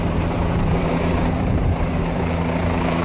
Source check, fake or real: fake